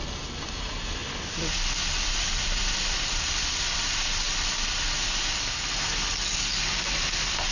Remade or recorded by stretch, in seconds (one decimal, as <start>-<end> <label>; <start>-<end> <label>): 0.0-7.5 recorded